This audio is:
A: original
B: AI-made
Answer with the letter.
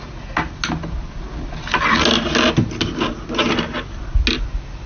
A